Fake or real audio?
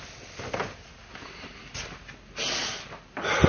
real